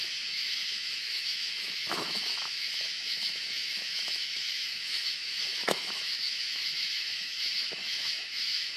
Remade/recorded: remade